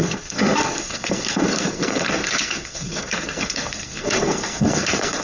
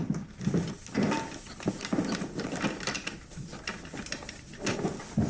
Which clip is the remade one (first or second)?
first